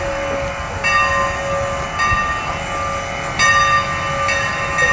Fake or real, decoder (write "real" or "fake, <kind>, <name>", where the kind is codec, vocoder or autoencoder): real